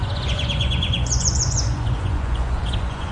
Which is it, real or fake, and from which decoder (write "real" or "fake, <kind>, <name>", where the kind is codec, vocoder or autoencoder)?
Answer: fake, vocoder, Vocos